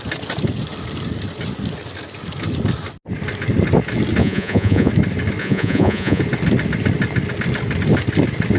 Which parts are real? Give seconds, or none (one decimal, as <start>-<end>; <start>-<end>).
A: 0.0-4.2; 4.9-5.4; 6.2-8.6